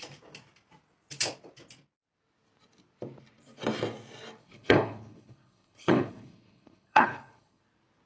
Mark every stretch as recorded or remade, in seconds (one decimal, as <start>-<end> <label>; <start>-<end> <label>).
0.0-4.4 recorded; 4.4-7.6 remade; 7.6-8.1 recorded